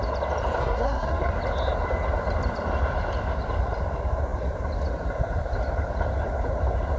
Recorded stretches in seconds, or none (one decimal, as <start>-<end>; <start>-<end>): 0.0-0.6; 1.3-7.0